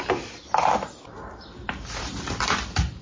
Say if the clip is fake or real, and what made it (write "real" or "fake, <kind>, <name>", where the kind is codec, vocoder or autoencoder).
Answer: real